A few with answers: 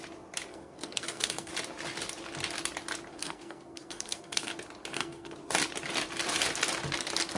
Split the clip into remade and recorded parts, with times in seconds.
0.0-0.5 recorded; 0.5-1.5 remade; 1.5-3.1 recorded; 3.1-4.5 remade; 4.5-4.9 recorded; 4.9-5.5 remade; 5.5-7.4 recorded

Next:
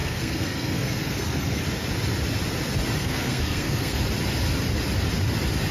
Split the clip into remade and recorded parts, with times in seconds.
0.0-1.6 remade; 1.6-3.0 recorded; 3.0-4.0 remade; 4.0-5.7 recorded

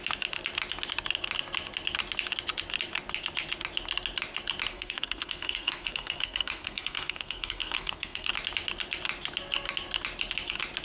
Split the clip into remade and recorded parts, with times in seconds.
0.0-4.7 recorded; 4.7-8.3 remade; 8.3-10.8 recorded

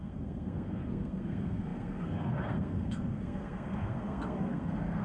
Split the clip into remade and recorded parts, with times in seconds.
0.0-5.0 remade

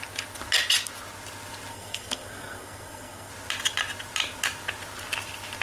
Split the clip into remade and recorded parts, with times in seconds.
0.0-1.7 recorded; 1.7-3.3 remade; 3.3-5.6 recorded

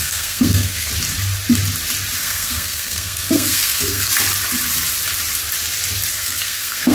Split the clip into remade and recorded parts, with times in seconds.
0.0-0.9 remade; 0.9-2.2 recorded; 2.2-4.1 remade; 4.1-6.1 recorded; 6.1-6.9 remade